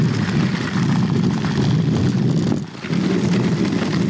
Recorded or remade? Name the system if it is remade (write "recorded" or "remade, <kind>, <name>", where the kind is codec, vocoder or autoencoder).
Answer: recorded